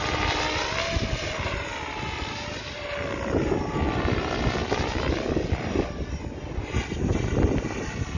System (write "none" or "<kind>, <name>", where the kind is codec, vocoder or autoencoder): none